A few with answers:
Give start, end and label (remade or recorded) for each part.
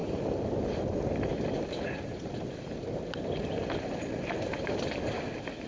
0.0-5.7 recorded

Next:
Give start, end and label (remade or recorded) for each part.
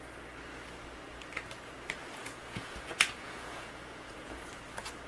0.0-2.2 recorded; 2.2-4.5 remade; 4.5-5.1 recorded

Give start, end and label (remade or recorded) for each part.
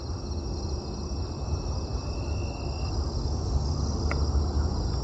0.0-5.0 recorded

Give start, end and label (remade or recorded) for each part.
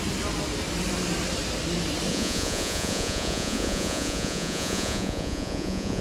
0.0-2.1 recorded; 2.1-6.0 remade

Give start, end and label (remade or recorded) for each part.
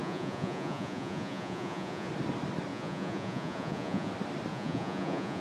0.0-2.1 remade; 2.1-2.7 recorded; 2.7-4.1 remade; 4.1-4.5 recorded; 4.5-5.4 remade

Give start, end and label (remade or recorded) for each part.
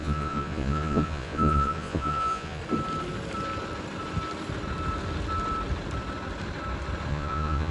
0.0-2.6 remade; 2.6-7.1 recorded; 7.1-7.7 remade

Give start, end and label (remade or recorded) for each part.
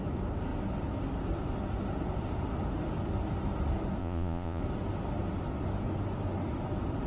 0.0-4.0 recorded; 4.0-4.6 remade; 4.6-7.1 recorded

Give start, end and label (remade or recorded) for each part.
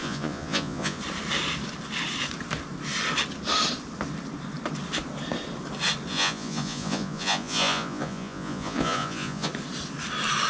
0.0-1.0 remade; 1.0-6.1 recorded; 6.1-9.5 remade; 9.5-10.5 recorded